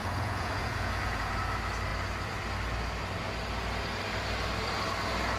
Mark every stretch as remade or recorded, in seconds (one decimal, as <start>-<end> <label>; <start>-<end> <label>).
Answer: 0.0-1.3 remade; 1.3-5.4 recorded